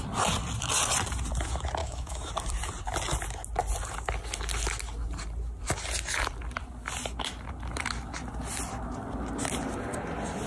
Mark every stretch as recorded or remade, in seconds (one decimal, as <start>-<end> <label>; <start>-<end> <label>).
0.0-1.8 recorded; 1.8-2.3 remade; 2.3-10.5 recorded